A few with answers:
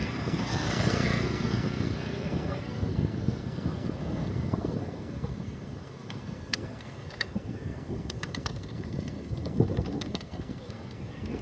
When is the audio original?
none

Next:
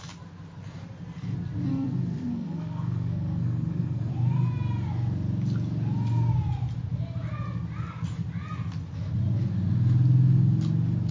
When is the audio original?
0.0-1.7; 4.1-11.1